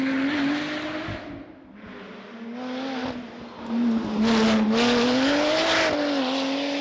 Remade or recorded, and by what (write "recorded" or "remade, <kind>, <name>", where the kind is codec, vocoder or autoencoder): recorded